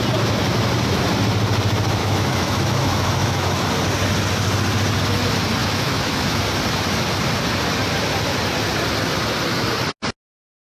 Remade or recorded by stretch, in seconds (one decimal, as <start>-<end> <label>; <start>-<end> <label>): 0.0-2.0 recorded; 2.0-3.7 remade; 3.7-5.6 recorded; 5.6-6.4 remade; 6.4-10.6 recorded